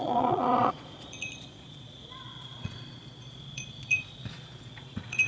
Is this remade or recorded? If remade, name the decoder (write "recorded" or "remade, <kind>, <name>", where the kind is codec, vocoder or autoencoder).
remade, vocoder, Vocos